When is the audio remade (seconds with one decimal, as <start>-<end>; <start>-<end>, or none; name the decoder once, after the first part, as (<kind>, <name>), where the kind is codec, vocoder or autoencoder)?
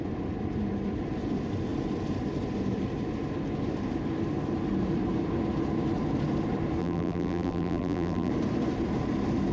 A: 6.8-8.3 (vocoder, BigVGAN v2)